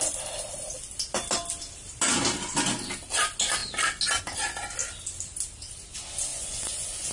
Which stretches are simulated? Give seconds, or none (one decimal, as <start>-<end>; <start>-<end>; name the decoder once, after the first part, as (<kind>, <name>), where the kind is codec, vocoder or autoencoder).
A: 6.3-7.1 (vocoder, Vocos)